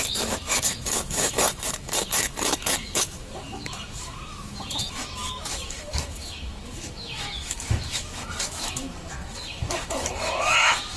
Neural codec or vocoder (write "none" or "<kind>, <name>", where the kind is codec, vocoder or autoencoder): autoencoder, DAC-VAE